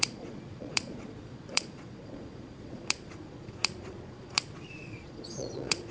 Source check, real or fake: fake